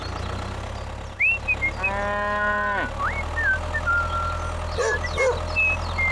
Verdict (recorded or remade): recorded